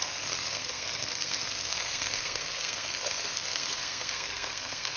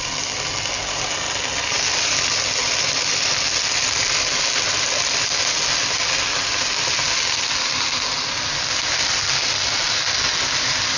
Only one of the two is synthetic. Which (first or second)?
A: first